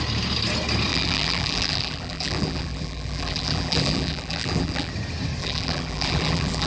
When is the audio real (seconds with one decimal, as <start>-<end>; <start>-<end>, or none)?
0.0-0.9; 4.9-5.4

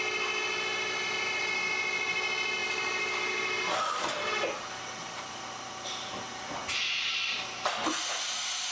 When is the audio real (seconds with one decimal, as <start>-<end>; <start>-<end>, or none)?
0.0-2.6; 6.5-8.7

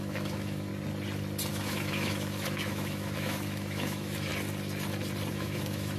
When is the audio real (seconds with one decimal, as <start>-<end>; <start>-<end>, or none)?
0.7-1.5; 4.3-5.3